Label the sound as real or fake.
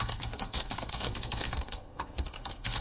fake